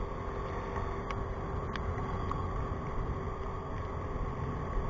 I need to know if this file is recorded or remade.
recorded